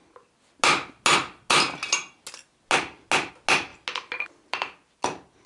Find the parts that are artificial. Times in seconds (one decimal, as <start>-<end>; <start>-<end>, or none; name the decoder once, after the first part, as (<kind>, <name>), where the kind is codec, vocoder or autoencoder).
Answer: none